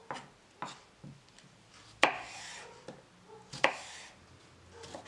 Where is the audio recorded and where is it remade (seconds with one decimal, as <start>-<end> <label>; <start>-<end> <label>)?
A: 0.0-5.1 recorded